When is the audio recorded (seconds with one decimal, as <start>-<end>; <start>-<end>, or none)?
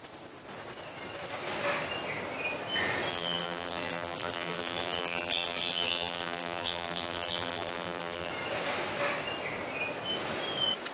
0.0-3.1; 8.3-10.9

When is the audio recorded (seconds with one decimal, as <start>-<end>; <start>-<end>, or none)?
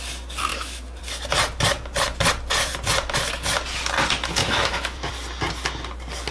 0.0-0.5; 1.0-4.4; 5.1-6.3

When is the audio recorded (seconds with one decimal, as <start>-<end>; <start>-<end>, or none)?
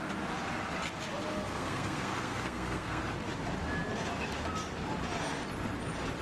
0.0-1.3; 3.0-6.2